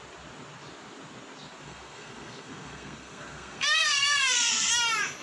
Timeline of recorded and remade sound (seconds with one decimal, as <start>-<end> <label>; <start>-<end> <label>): 0.0-1.6 recorded; 1.6-4.7 remade; 4.7-5.2 recorded